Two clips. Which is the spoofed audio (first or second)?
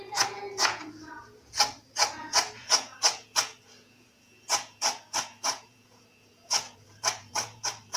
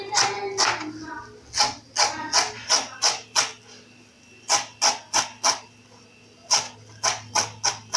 first